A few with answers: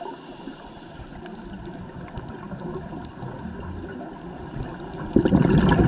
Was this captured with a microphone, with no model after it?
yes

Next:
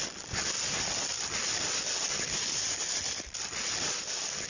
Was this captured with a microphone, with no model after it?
yes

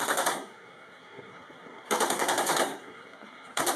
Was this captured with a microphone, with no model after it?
no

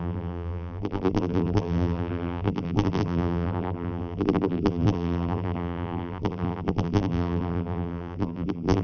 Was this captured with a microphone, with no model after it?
no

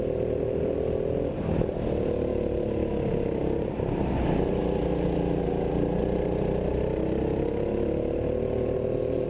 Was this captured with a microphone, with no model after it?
yes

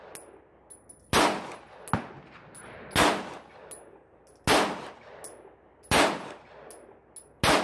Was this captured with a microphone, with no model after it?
yes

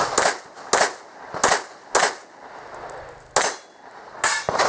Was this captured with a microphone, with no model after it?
yes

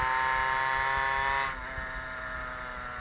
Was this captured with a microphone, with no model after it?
yes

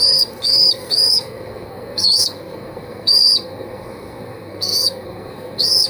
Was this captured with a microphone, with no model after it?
no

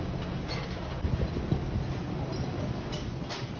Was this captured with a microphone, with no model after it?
yes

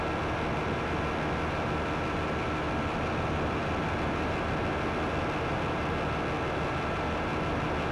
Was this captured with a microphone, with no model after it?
yes